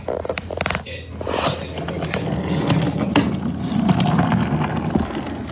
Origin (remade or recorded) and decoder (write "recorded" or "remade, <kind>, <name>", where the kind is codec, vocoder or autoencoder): recorded